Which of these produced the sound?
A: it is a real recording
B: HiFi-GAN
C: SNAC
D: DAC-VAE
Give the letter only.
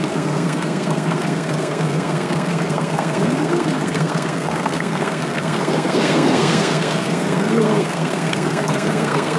C